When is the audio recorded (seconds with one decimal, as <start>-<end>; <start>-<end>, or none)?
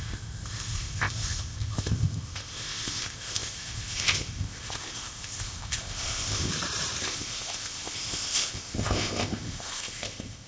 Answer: 6.5-7.0